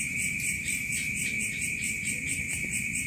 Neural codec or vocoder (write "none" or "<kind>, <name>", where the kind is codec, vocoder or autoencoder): vocoder, BigVGAN v2